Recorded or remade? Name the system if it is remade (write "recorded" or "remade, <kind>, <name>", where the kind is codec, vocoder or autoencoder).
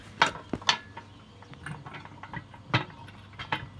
recorded